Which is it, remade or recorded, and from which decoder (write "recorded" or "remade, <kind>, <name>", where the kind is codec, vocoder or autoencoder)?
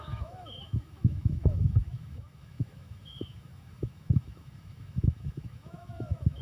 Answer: remade, autoencoder, DAC-VAE